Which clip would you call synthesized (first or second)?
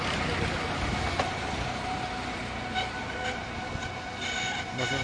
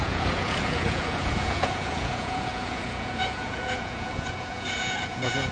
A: second